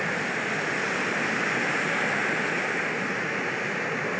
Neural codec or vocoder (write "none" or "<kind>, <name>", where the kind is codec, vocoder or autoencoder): none